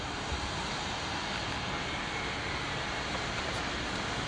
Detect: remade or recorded recorded